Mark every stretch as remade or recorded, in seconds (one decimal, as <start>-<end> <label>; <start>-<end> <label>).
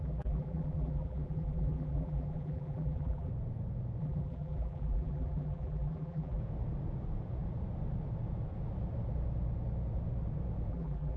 0.0-3.3 remade; 3.3-4.0 recorded; 4.0-6.4 remade; 6.4-10.7 recorded; 10.7-11.2 remade